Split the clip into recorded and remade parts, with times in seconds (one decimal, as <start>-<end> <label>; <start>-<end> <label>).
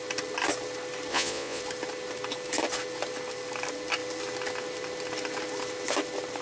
0.0-1.1 recorded; 1.1-1.6 remade; 1.6-6.4 recorded